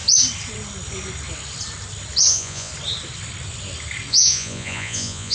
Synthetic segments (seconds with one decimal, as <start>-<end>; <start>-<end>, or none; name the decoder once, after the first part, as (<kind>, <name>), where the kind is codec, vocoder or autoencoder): 2.3-2.7 (vocoder, Vocos); 4.1-5.3